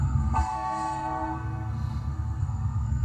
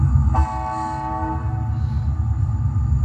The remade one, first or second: first